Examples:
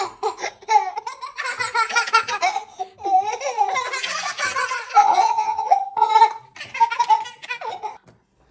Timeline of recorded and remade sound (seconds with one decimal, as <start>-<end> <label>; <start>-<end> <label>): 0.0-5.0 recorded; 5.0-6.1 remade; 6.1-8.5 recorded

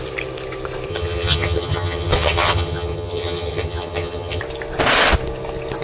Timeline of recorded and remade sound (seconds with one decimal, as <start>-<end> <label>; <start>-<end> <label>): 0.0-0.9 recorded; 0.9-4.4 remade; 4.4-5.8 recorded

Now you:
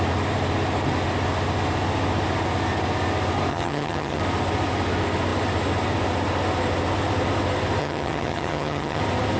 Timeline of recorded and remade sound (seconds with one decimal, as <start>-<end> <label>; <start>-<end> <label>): 0.0-3.5 recorded; 3.5-4.2 remade; 4.2-7.8 recorded; 7.8-9.0 remade; 9.0-9.4 recorded

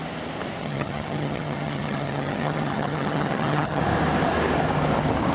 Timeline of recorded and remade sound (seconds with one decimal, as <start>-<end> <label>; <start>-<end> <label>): 0.0-0.6 recorded; 0.6-3.8 remade; 3.8-5.3 recorded

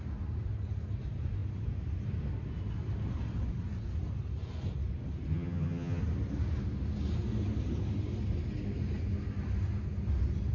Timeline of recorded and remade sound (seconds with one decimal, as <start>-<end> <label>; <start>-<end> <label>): 0.0-5.3 recorded; 5.3-6.0 remade; 6.0-10.5 recorded

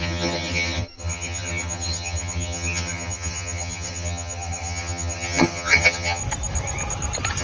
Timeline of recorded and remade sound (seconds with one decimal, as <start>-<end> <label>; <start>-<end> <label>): 0.0-6.2 remade; 6.2-7.4 recorded